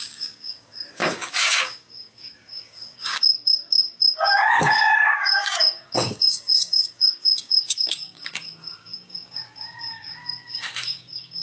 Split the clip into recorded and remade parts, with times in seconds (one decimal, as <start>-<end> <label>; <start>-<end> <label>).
0.0-11.4 remade